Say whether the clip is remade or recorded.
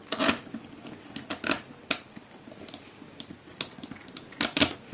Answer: recorded